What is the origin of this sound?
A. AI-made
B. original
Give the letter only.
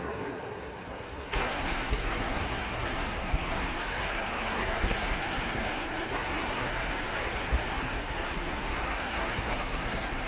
A